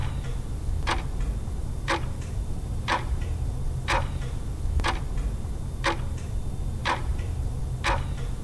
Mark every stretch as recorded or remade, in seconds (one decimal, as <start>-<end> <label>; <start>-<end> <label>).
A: 0.0-1.6 recorded; 1.6-4.4 remade; 4.4-6.8 recorded; 6.8-7.6 remade; 7.6-8.4 recorded